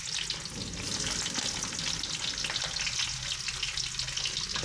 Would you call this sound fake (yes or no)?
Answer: no